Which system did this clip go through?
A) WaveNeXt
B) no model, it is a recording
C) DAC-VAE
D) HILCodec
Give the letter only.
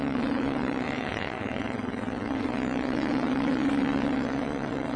A